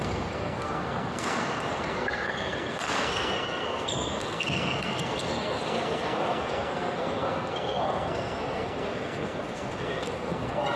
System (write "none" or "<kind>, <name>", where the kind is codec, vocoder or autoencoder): codec, SNAC